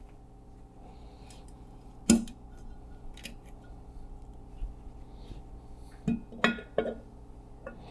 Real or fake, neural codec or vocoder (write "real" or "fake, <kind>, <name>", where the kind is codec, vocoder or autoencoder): real